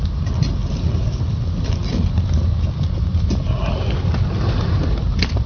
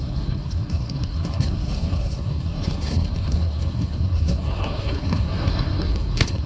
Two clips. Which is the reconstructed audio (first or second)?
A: second